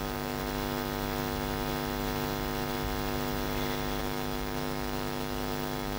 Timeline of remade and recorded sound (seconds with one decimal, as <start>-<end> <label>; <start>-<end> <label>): 0.0-0.4 remade; 0.4-4.0 recorded; 4.0-6.0 remade